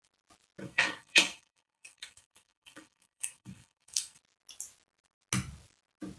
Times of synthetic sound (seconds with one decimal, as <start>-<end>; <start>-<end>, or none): 0.6-4.2